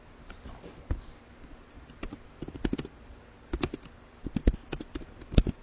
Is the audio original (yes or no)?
yes